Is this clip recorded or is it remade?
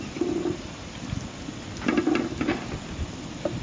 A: recorded